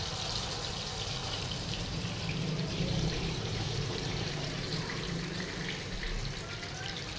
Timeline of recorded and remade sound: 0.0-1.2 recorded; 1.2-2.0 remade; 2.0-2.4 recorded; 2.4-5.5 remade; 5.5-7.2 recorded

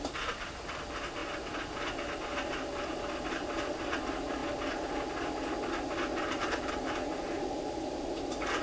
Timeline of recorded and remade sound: 0.0-1.2 remade; 1.2-3.2 recorded; 3.2-4.4 remade; 4.4-6.7 recorded; 6.7-8.6 remade

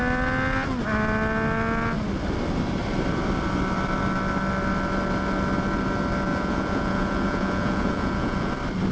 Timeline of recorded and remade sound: 0.0-6.3 recorded; 6.3-8.5 remade; 8.5-8.9 recorded

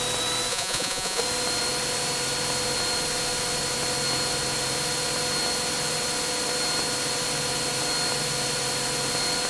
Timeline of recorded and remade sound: 0.0-0.5 recorded; 0.5-1.2 remade; 1.2-9.5 recorded

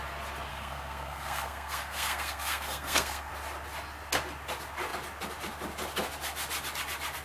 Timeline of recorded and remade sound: 0.0-0.5 recorded; 0.5-3.3 remade; 3.3-7.2 recorded

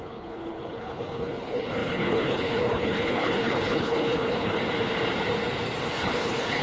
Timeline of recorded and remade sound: 0.0-4.6 remade; 4.6-5.9 recorded; 5.9-6.6 remade